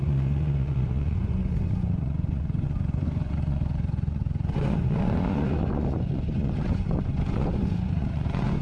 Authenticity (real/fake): fake